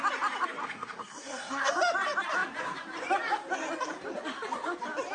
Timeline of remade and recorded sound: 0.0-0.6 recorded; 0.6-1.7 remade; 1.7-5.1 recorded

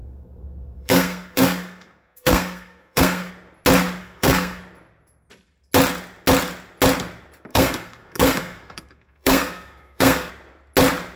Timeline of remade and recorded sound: 0.0-3.3 remade; 3.3-4.0 recorded; 4.0-4.6 remade; 4.6-7.5 recorded; 7.5-10.3 remade; 10.3-11.2 recorded

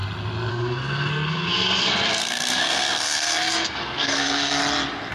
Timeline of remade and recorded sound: 0.0-0.5 recorded; 0.5-4.6 remade; 4.6-5.1 recorded